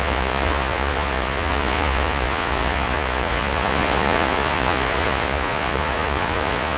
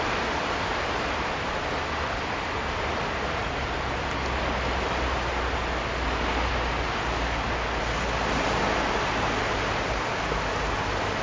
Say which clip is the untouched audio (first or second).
second